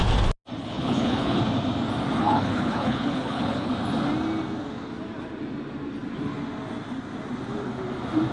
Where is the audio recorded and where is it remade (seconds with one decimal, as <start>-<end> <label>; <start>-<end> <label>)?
0.0-0.6 recorded; 0.6-1.4 remade; 1.4-2.2 recorded; 2.2-3.7 remade; 3.7-8.3 recorded